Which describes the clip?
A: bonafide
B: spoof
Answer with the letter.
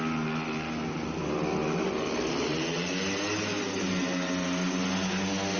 A